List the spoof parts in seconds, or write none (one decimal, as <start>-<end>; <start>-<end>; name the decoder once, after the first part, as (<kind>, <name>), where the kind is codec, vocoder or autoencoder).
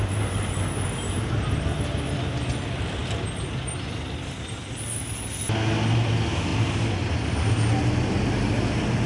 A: none